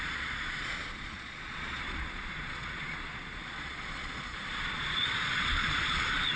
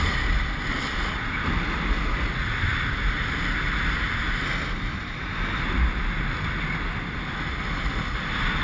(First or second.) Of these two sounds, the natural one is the second